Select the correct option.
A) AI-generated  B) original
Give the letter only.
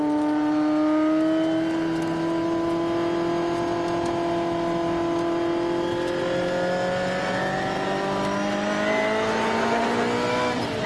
B